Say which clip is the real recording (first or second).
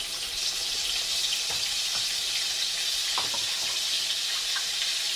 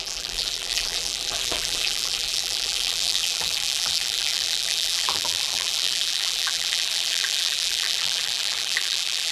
first